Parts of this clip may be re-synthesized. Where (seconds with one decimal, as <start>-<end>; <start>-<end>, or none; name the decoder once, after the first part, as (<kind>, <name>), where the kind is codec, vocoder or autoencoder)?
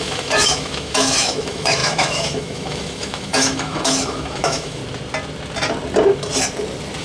0.0-4.8 (autoencoder, DAC-VAE)